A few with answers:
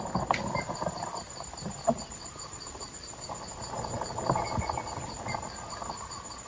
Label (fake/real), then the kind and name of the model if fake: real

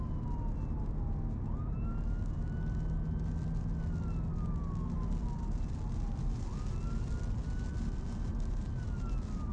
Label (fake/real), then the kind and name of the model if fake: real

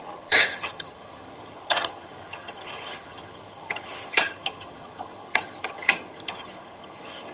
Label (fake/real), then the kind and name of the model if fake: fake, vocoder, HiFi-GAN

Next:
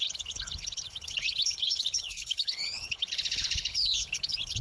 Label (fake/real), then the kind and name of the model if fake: fake, codec, HILCodec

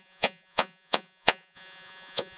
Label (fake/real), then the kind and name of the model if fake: fake, vocoder, Vocos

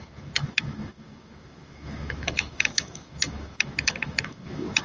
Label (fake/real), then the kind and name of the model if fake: fake, autoencoder, DAC-VAE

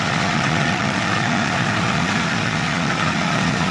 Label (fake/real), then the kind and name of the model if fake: fake, vocoder, Vocos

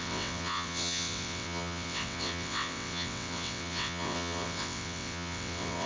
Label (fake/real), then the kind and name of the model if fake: fake, vocoder, WaveNeXt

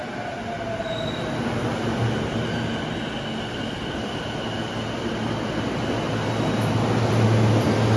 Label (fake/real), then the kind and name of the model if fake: real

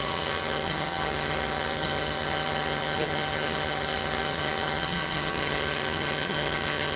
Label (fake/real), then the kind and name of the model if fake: fake, vocoder, HiFi-GAN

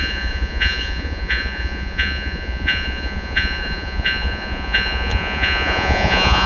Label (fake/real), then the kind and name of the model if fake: fake, vocoder, Vocos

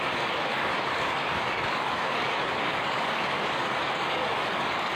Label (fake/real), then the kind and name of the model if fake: fake, codec, DAC